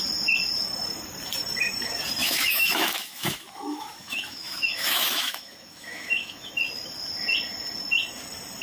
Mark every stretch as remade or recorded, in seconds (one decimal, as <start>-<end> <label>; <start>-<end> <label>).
0.0-2.2 recorded; 2.2-6.5 remade; 6.5-8.6 recorded